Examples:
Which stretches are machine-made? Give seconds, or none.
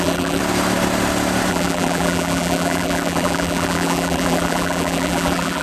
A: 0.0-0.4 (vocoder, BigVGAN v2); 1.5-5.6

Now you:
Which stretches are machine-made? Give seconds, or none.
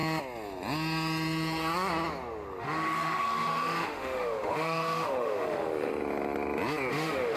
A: 2.6-5.9 (autoencoder, DAC-VAE); 6.9-7.4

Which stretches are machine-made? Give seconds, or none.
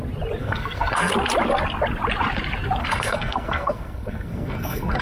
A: 0.4-1.1 (codec, SNAC); 2.8-5.0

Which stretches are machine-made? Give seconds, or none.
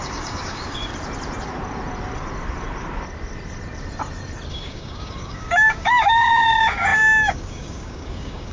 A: 0.0-0.9 (codec, DAC); 4.5-8.5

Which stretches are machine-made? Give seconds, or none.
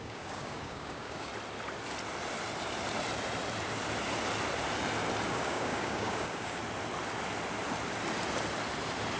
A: 0.0-1.3 (codec, DAC); 5.3-6.6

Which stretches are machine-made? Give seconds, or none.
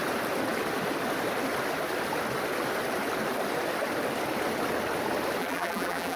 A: 5.4-6.2 (vocoder, BigVGAN v2)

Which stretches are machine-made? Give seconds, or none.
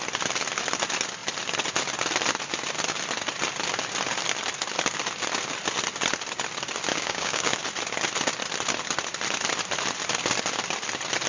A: 6.9-7.6 (codec, DAC)